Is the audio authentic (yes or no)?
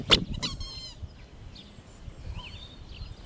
yes